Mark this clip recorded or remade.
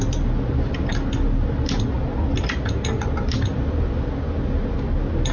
recorded